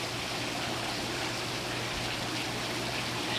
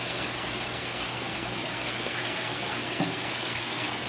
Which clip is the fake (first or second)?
second